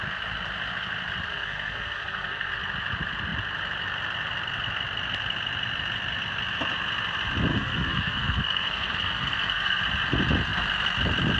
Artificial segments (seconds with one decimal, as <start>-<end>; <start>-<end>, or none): 1.3-2.5; 7.5-9.8